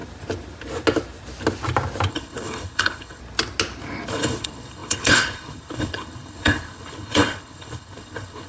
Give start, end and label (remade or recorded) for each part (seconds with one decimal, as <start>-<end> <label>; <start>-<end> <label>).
0.0-2.1 recorded; 2.1-3.2 remade; 3.2-4.1 recorded; 4.1-8.5 remade